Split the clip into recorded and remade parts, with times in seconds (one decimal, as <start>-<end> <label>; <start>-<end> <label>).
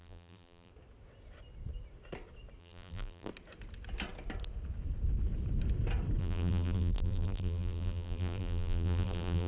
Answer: 0.0-0.7 remade; 0.7-2.6 recorded; 2.6-3.3 remade; 3.3-6.2 recorded; 6.2-9.5 remade